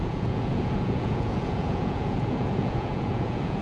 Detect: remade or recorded remade